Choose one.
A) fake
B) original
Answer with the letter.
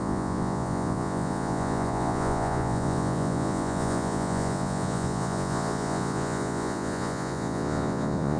A